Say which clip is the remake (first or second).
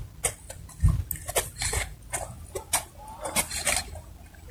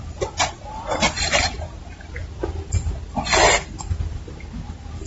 second